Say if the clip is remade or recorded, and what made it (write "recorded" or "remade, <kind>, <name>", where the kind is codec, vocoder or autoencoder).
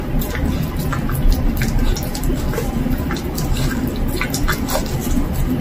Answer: recorded